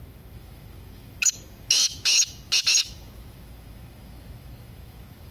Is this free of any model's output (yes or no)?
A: no